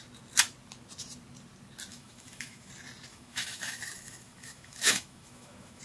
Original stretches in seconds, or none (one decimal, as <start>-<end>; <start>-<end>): 0.0-1.9; 2.7-3.1